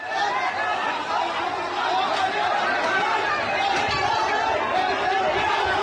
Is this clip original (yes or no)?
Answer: yes